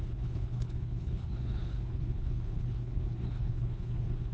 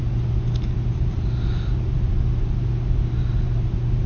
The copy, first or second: first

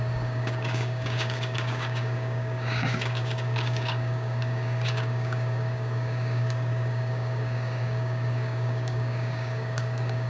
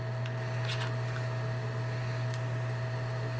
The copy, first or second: first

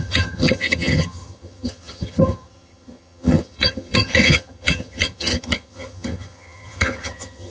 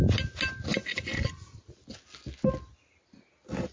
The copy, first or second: first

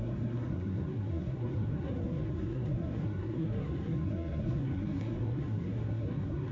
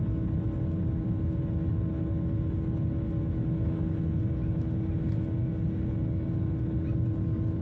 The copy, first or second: first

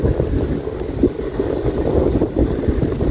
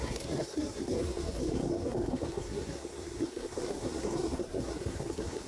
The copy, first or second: second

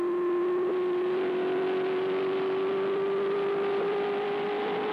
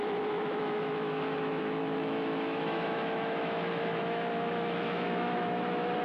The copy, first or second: second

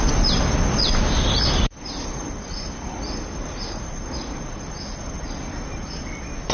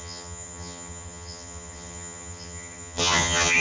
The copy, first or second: second